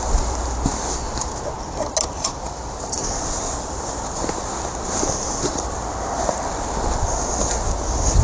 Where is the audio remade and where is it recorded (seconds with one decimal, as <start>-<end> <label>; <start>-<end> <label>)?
0.0-8.2 recorded